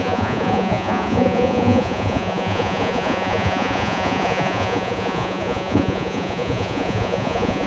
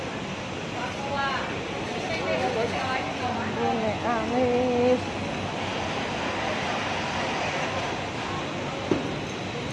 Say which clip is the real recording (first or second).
second